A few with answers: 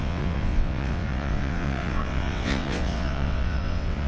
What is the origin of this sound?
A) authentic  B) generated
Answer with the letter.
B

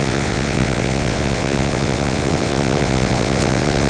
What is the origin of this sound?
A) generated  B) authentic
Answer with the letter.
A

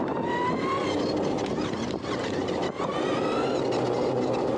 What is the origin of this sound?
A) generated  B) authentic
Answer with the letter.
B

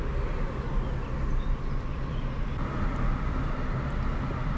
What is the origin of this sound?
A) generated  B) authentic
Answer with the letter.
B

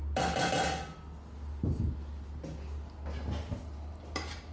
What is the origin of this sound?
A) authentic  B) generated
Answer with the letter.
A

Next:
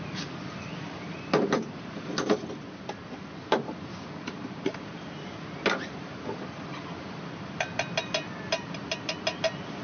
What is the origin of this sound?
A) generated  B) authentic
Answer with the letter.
B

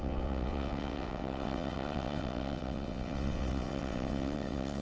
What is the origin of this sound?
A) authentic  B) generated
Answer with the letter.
B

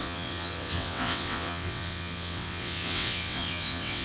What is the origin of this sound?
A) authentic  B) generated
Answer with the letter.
B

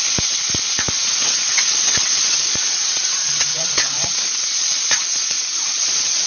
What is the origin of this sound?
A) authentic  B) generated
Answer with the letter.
B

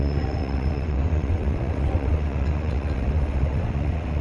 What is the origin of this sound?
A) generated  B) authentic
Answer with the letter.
A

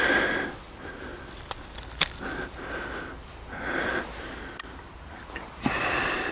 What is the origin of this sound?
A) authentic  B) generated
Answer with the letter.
A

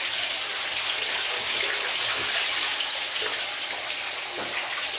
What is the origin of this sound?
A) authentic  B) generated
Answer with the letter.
A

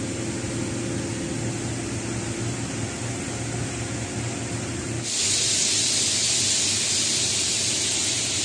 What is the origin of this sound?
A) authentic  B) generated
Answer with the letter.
A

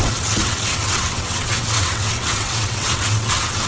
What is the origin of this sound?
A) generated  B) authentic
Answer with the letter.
A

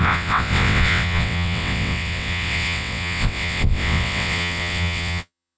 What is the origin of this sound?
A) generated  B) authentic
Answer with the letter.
A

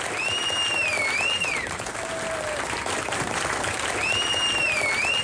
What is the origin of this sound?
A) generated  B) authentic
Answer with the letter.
B